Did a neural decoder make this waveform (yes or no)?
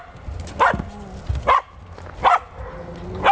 no